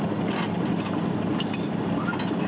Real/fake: real